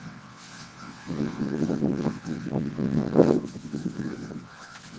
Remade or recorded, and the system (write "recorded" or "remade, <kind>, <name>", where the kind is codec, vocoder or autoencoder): remade, vocoder, WaveNeXt